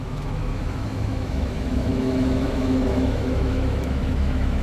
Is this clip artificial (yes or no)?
yes